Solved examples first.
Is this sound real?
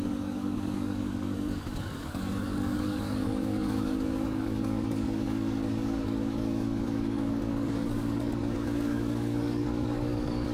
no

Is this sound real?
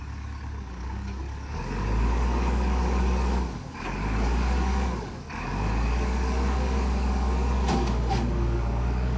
no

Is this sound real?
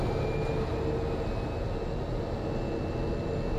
yes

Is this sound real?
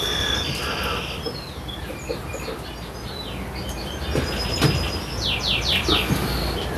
yes